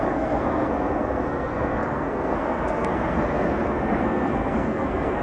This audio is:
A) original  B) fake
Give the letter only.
B